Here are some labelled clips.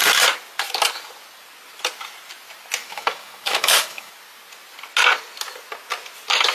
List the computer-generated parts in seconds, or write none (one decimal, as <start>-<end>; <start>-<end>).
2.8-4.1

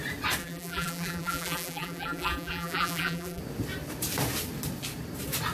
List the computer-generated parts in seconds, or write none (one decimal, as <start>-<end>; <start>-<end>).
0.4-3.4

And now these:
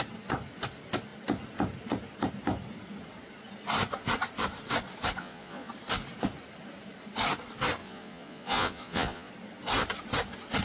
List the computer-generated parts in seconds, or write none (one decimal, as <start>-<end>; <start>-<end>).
5.2-5.7; 7.8-9.3